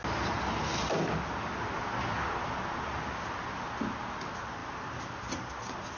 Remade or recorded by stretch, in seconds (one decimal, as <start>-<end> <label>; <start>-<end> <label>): 0.0-4.6 recorded; 4.6-6.0 remade